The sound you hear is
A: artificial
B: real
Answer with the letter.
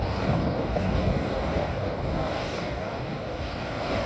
A